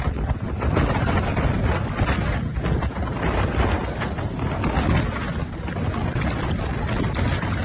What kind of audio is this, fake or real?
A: real